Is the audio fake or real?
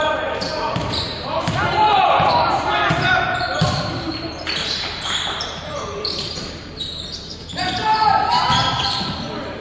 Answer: fake